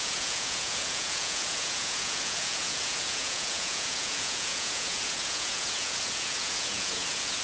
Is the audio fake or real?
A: fake